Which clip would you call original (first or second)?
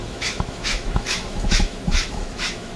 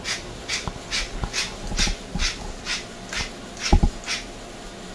second